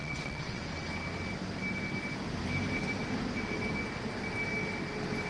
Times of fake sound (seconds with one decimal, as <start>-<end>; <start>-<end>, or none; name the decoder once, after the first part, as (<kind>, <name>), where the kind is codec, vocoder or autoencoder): 0.0-0.6 (vocoder, WaveNeXt)